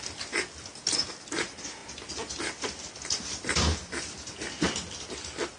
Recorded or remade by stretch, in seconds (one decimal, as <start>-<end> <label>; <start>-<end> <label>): 0.0-5.6 recorded